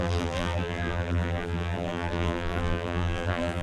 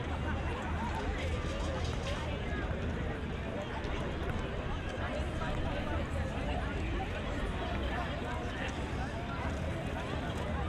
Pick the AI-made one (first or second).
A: first